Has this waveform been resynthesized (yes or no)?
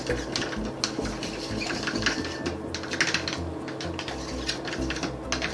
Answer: no